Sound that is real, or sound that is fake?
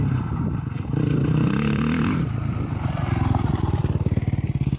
real